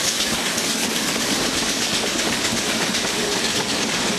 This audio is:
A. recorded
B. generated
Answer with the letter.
B